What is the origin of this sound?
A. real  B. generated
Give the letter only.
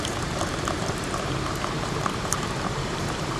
B